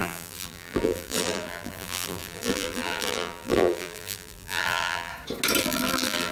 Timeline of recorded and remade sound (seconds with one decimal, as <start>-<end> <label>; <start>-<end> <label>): 0.0-5.1 remade; 5.1-5.6 recorded; 5.6-6.3 remade